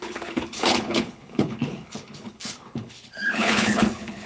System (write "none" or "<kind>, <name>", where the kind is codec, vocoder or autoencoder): codec, HILCodec